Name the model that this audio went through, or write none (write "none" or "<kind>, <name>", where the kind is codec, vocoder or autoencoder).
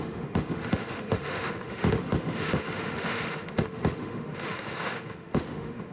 autoencoder, DAC-VAE